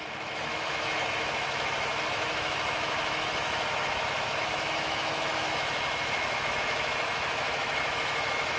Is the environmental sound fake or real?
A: fake